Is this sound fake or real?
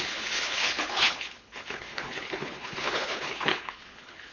fake